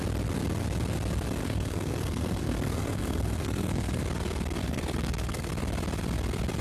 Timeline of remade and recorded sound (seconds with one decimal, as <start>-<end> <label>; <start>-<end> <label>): 0.0-1.4 recorded; 1.4-4.0 remade; 4.0-4.6 recorded; 4.6-5.5 remade; 5.5-6.6 recorded

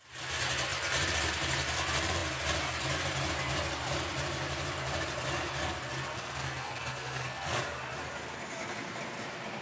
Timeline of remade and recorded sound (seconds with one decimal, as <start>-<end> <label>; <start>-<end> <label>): 0.0-6.1 recorded; 6.1-7.6 remade; 7.6-9.6 recorded